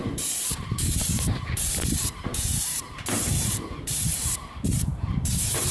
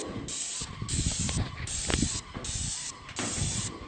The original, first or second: second